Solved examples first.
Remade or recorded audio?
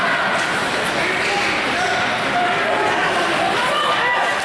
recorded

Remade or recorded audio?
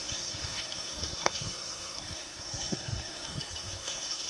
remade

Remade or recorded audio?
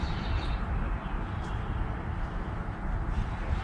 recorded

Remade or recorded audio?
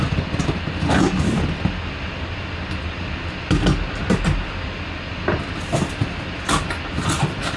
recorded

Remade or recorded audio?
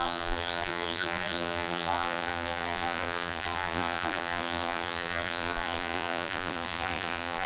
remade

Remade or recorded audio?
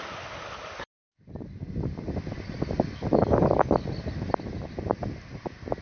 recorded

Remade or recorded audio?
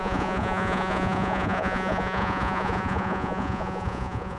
remade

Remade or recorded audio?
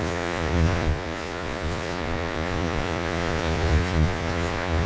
remade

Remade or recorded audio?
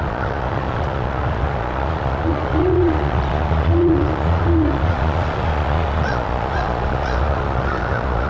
remade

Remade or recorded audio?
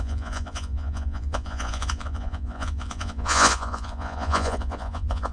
remade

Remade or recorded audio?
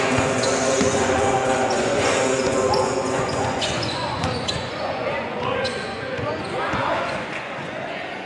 remade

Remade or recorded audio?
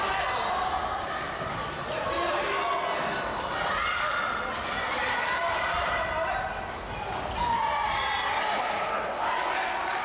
recorded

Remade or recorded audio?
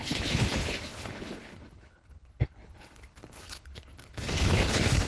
remade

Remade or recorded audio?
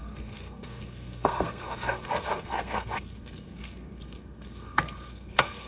remade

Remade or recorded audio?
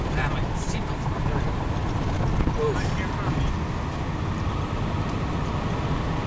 recorded